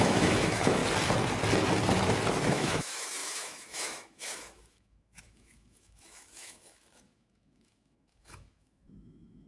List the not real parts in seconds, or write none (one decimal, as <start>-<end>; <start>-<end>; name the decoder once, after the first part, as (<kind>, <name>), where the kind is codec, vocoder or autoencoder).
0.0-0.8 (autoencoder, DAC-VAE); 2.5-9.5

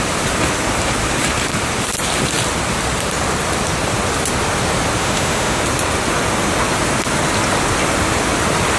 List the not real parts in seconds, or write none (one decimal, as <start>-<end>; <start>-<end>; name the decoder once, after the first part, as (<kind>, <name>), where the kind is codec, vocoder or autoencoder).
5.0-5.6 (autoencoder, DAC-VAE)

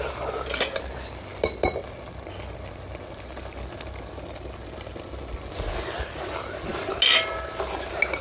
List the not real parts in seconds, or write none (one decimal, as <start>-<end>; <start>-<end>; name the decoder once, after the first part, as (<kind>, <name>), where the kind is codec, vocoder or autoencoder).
none

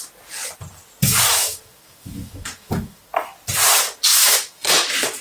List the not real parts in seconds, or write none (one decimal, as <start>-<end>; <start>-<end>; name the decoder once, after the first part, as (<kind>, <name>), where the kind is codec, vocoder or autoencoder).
1.3-3.0 (autoencoder, DAC-VAE); 4.1-5.2

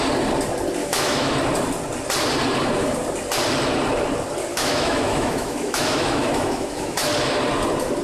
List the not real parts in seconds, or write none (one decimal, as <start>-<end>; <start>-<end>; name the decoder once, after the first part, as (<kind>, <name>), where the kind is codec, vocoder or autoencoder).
0.8-1.3 (autoencoder, DAC-VAE); 4.5-7.1